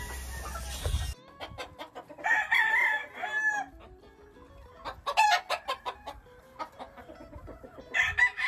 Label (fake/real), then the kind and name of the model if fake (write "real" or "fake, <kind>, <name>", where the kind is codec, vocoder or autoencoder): real